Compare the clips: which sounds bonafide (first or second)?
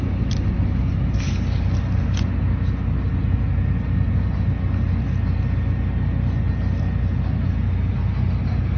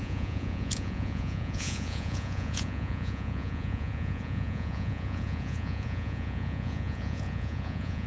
first